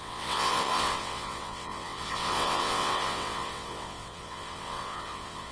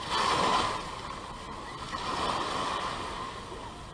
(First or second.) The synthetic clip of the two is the first